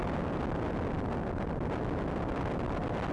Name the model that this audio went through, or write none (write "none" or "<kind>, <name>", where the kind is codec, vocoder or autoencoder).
none